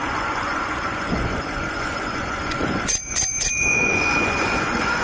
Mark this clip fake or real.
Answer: fake